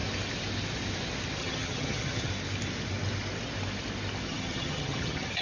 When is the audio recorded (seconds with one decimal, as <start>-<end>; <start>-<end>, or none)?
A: 0.0-1.4; 2.3-4.3